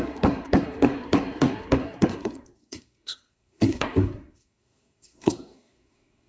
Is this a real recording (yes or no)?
no